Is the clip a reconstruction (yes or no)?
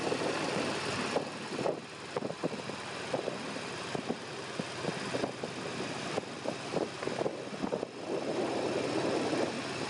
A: no